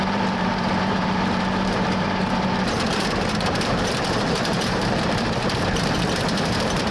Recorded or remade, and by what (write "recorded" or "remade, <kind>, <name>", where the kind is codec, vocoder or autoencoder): remade, vocoder, BigVGAN v2